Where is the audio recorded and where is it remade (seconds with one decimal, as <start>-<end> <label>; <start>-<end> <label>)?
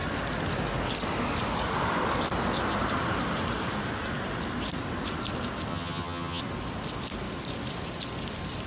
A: 0.0-5.7 recorded; 5.7-6.4 remade; 6.4-8.7 recorded